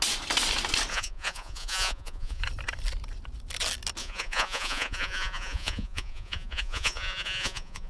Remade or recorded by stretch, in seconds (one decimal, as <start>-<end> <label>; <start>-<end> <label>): 0.0-0.9 recorded; 0.9-2.4 remade; 2.4-4.0 recorded; 4.0-7.9 remade